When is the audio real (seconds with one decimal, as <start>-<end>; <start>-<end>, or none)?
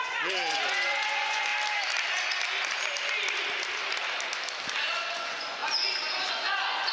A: 1.5-4.9; 5.6-6.3